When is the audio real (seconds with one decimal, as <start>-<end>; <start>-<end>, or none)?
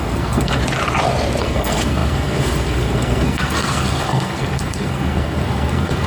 0.6-1.4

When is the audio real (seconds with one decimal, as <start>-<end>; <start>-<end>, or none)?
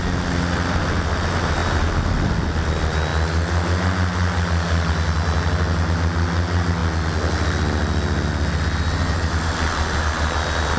0.0-10.8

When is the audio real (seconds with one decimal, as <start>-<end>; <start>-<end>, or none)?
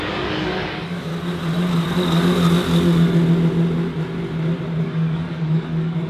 1.1-4.8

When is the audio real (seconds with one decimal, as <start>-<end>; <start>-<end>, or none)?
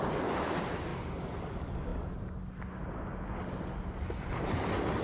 0.9-1.5; 1.9-5.0